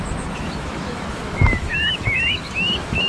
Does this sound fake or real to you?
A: fake